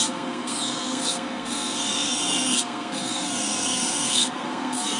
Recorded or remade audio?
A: remade